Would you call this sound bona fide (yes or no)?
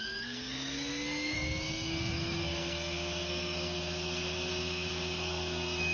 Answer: no